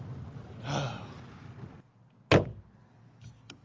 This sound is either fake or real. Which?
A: real